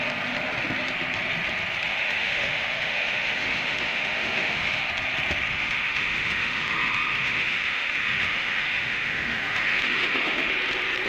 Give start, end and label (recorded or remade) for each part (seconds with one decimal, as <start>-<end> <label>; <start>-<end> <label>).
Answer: 0.0-1.9 recorded; 1.9-4.9 remade; 4.9-5.5 recorded; 5.5-10.5 remade; 10.5-11.1 recorded